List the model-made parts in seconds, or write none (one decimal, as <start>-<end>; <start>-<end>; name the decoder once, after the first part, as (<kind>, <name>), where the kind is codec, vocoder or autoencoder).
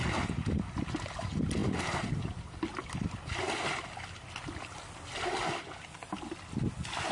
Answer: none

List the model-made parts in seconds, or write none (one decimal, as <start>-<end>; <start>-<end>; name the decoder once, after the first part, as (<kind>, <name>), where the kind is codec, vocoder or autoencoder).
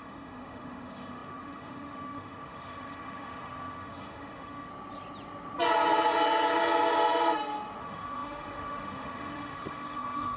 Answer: 0.0-4.7 (autoencoder, DAC-VAE); 7.8-10.4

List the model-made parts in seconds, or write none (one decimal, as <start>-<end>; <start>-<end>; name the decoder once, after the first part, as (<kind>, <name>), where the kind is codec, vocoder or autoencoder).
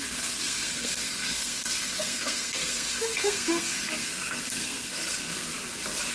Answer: 0.0-5.5 (codec, SNAC)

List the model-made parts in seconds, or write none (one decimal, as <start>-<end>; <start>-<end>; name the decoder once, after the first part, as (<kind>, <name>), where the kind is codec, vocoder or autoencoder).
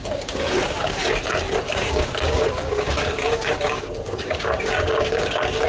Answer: 0.0-1.0 (codec, DAC); 1.7-5.7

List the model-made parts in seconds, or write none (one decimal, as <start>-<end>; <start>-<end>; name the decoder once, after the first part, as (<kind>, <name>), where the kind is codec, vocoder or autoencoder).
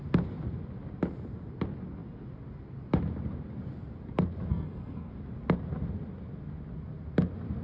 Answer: 4.5-5.1 (codec, SNAC)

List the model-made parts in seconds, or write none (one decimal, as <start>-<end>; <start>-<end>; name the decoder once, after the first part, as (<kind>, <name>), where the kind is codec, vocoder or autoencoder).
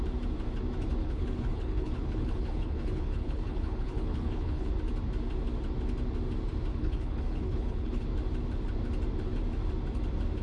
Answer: 1.0-4.7 (codec, HILCodec); 6.7-8.0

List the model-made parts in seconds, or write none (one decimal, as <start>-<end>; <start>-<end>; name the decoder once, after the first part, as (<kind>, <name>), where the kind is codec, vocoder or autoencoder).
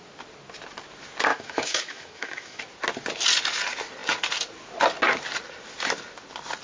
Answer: 1.3-2.6 (autoencoder, DAC-VAE)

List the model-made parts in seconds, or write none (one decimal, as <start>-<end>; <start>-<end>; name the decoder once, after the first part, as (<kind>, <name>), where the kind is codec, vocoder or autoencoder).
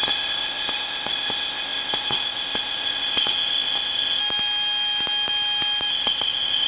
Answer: 0.0-4.2 (codec, ZipCodec); 5.9-6.7